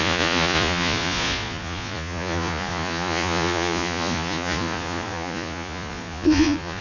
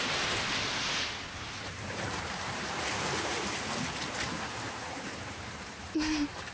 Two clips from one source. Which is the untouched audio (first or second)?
second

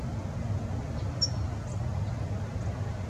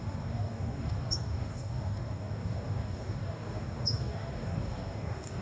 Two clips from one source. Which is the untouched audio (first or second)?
first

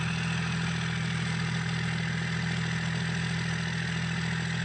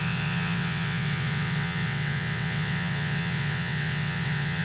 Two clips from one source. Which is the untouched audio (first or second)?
first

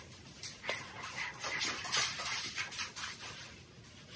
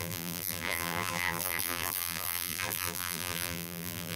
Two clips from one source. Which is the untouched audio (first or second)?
first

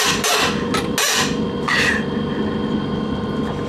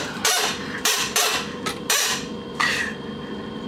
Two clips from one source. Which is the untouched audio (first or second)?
first